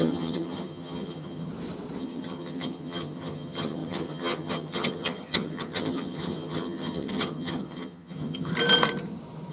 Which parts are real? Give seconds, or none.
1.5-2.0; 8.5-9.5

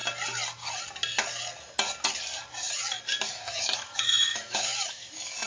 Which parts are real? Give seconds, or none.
0.0-3.3

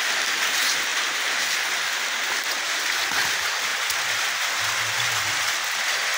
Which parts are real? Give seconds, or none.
0.0-6.2

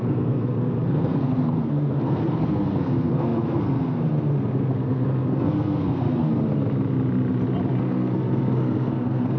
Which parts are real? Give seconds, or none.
6.4-7.8